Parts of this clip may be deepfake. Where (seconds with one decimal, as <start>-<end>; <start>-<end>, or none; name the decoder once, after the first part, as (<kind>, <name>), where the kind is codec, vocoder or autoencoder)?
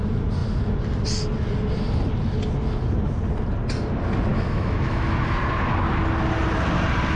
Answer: 4.3-5.1 (autoencoder, DAC-VAE)